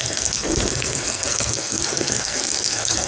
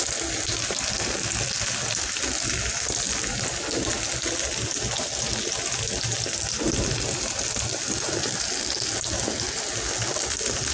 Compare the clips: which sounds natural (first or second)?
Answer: second